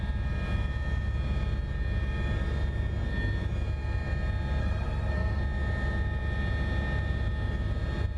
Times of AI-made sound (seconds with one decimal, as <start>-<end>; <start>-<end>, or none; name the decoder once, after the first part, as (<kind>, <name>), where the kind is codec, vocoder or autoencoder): 4.6-5.4 (codec, SNAC)